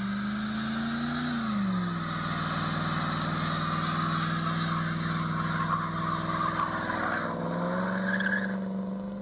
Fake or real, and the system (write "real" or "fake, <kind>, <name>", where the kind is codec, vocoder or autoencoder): real